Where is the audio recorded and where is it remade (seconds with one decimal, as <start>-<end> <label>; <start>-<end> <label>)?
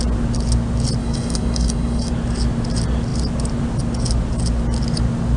0.0-1.0 recorded; 1.0-2.1 remade; 2.1-5.4 recorded